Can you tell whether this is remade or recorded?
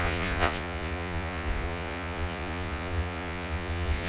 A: remade